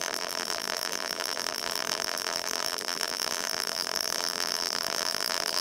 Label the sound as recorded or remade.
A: remade